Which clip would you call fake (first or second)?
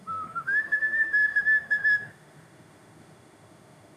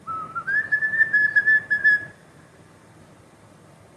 first